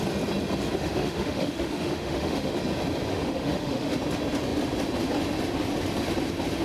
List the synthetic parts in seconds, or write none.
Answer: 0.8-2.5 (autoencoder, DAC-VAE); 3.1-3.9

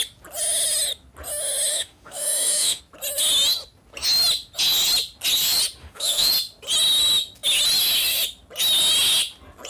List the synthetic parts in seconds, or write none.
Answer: 1.7-2.8 (autoencoder, DAC-VAE); 5.8-6.3

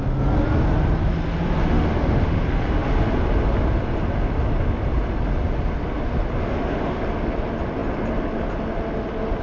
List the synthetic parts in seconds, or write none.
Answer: 1.6-2.4 (autoencoder, DAC-VAE); 6.4-7.0

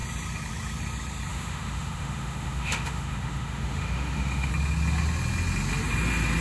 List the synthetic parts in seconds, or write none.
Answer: 1.3-4.5 (autoencoder, DAC-VAE)

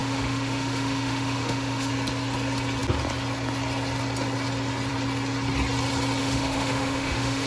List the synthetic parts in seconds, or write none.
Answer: 0.0-1.9 (autoencoder, DAC-VAE); 6.2-7.5